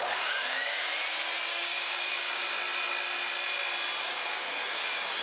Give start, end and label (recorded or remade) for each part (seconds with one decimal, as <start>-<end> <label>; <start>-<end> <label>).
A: 0.0-0.9 remade; 0.9-1.5 recorded; 1.5-2.4 remade; 2.4-4.0 recorded; 4.0-5.2 remade